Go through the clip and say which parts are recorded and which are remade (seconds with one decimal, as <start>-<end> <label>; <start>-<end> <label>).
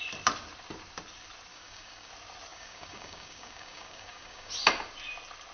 0.0-1.5 recorded; 1.5-2.1 remade; 2.1-2.5 recorded; 2.5-4.5 remade; 4.5-5.5 recorded